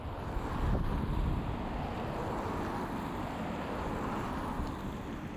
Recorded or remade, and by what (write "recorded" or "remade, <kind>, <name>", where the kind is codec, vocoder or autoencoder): recorded